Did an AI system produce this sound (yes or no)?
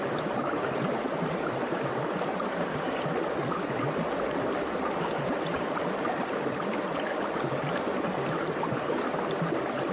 no